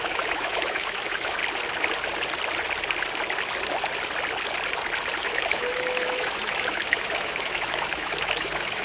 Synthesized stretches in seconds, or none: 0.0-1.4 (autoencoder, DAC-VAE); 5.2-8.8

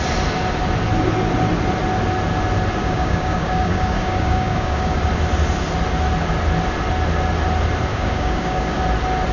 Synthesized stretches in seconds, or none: 2.8-5.0 (codec, DAC); 7.9-8.8

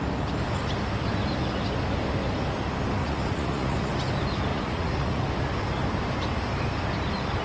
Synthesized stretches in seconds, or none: 3.0-3.9 (vocoder, Vocos); 4.5-5.2

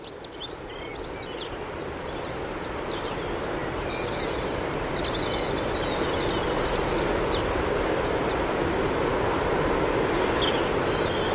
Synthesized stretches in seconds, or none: none

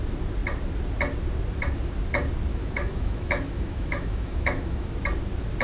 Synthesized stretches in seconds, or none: 2.5-4.9 (autoencoder, DAC-VAE)

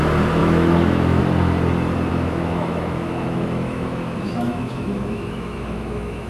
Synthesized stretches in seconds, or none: 0.4-1.2 (autoencoder, DAC-VAE); 2.1-6.3

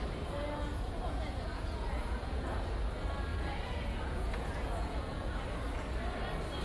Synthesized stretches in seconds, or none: 0.7-2.6 (vocoder, Vocos); 3.3-5.4

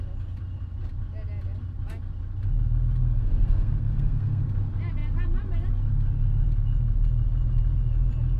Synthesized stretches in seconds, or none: 3.0-4.4 (codec, SNAC)